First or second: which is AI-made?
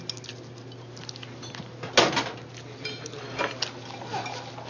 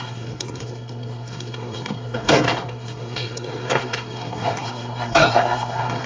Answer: second